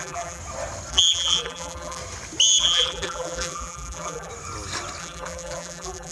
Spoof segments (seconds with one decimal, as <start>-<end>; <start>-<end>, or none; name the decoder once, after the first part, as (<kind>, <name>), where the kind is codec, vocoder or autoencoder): 0.0-0.4 (vocoder, BigVGAN v2); 0.9-2.0; 2.6-4.3; 5.0-6.1